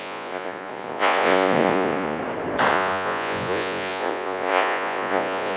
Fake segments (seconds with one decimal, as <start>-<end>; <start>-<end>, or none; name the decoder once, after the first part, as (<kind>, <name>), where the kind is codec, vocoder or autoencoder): 0.0-2.2 (vocoder, Vocos); 2.7-5.6